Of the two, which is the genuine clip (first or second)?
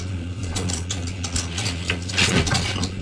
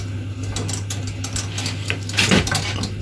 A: second